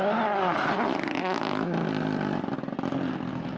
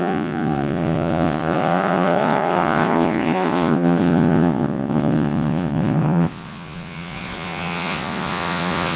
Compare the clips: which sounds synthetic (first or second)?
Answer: second